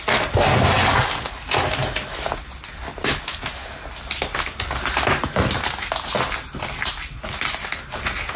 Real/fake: real